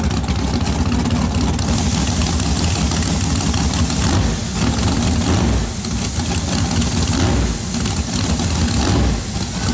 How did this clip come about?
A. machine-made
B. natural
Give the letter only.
B